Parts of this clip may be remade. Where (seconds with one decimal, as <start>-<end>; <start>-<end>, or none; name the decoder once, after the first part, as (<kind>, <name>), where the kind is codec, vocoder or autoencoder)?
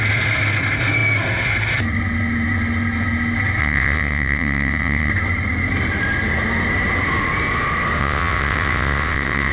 3.6-5.1 (vocoder, WaveNeXt); 8.0-9.5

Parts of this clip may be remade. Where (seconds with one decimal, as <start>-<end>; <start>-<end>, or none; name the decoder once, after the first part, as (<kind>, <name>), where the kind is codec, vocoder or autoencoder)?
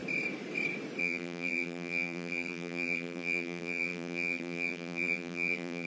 1.0-5.9 (vocoder, BigVGAN v2)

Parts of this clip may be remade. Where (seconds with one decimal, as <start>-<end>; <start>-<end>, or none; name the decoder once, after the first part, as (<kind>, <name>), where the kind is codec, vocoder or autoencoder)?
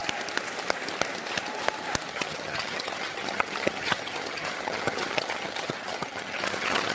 2.1-6.9 (vocoder, HiFi-GAN)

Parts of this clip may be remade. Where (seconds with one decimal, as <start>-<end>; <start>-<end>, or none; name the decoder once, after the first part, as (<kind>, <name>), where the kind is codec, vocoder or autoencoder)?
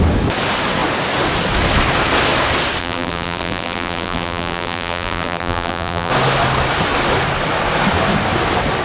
2.8-6.1 (vocoder, BigVGAN v2)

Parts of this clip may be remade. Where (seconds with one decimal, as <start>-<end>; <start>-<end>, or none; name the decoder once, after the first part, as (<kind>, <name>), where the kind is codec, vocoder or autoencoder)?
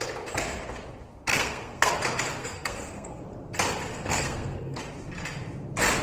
1.3-1.9 (codec, SNAC); 2.4-3.2; 3.9-4.8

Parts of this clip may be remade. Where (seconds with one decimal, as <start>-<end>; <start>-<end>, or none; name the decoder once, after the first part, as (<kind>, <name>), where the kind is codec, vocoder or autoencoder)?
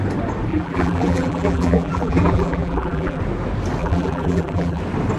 0.5-3.2 (vocoder, BigVGAN v2); 3.8-4.8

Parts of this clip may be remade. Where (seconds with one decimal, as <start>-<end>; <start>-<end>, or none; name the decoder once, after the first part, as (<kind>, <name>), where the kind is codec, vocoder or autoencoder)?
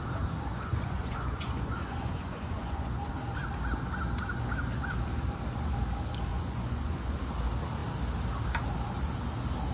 0.5-2.9 (vocoder, Vocos); 6.3-7.2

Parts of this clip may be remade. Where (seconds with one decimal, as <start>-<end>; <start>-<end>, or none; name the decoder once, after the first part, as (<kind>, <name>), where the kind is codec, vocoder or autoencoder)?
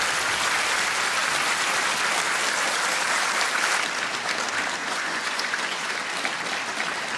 4.8-5.9 (vocoder, Vocos)